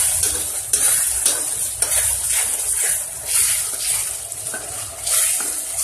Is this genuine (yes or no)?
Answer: yes